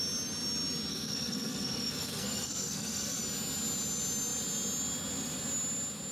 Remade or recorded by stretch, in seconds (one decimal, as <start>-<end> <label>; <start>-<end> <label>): 0.0-0.9 recorded; 0.9-3.2 remade; 3.2-6.1 recorded